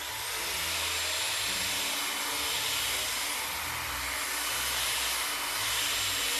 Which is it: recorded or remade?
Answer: recorded